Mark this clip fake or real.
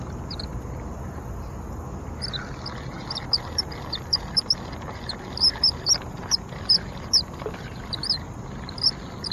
real